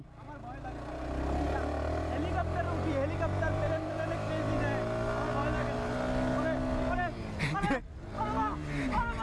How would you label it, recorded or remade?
recorded